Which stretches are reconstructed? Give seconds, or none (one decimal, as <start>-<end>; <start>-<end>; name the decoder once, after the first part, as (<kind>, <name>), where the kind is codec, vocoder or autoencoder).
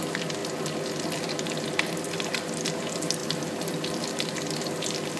none